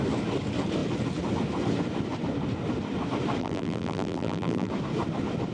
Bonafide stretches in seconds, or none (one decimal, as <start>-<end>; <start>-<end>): 0.0-3.4; 4.7-5.5